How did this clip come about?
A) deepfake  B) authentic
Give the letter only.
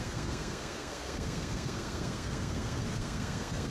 A